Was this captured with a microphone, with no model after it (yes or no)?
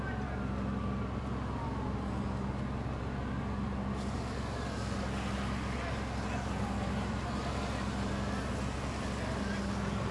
yes